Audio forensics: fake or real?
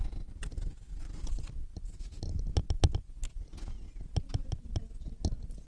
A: real